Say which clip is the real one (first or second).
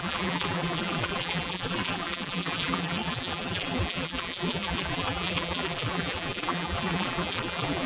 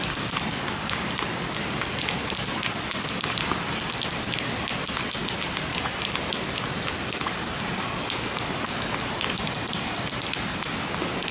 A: second